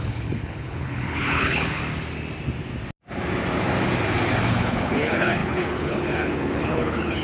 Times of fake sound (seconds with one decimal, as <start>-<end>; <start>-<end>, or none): 0.0-1.8; 4.5-7.2